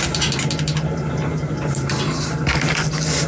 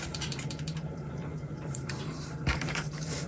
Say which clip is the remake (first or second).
second